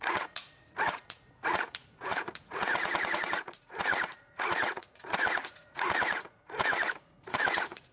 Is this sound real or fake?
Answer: fake